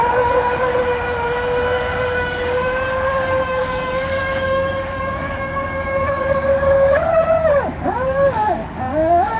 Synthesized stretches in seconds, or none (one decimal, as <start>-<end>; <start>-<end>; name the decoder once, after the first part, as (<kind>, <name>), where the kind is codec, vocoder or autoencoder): 0.0-0.7 (codec, DAC); 1.6-7.1; 7.6-9.4